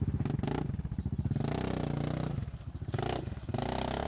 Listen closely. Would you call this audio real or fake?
real